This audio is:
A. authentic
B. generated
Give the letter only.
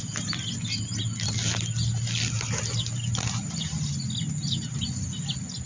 A